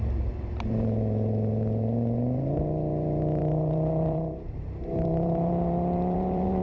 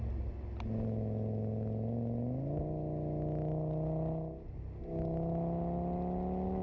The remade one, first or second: first